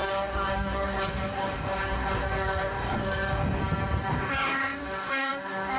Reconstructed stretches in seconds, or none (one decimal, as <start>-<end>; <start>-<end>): 0.0-3.6; 4.1-5.8

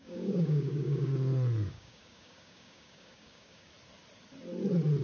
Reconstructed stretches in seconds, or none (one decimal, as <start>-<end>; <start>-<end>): 0.0-1.1; 1.7-3.7

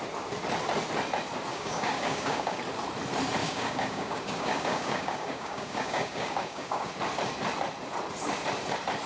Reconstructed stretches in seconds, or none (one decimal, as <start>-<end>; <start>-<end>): 1.5-2.6; 3.4-6.9

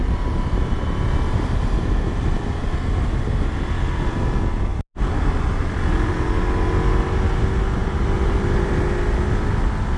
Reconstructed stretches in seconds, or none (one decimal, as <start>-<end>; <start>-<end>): none

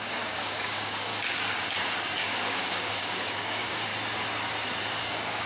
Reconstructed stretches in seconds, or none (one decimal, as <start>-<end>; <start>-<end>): 0.0-1.1; 2.2-3.9; 5.0-5.5

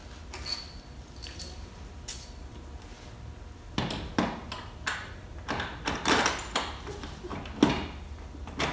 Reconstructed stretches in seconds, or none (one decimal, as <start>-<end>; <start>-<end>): none